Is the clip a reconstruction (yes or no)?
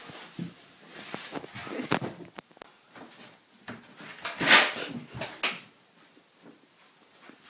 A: no